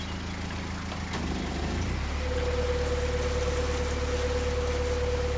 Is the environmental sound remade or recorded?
recorded